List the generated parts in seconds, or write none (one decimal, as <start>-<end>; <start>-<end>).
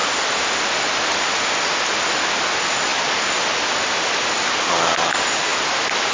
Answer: none